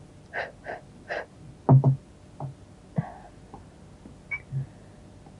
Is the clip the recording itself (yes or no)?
yes